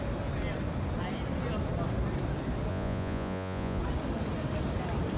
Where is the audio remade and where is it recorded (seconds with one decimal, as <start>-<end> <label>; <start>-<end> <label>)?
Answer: 0.0-2.7 recorded; 2.7-3.8 remade; 3.8-5.2 recorded